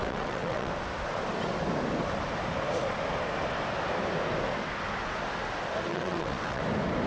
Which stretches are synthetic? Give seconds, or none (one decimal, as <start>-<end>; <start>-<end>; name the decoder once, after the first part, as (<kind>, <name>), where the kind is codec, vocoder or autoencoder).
0.0-0.7 (vocoder, WaveNeXt); 5.9-6.6